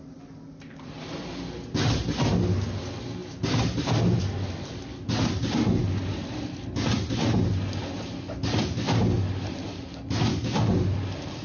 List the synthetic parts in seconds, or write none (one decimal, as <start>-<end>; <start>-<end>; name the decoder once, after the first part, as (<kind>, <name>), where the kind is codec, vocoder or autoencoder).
none